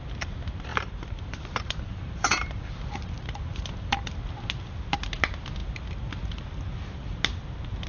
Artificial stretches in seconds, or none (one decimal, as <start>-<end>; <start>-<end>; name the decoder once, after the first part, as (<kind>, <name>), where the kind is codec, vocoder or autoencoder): 0.7-4.2 (vocoder, BigVGAN v2)